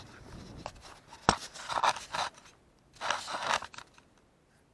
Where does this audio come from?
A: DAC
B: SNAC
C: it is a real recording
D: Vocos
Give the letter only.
C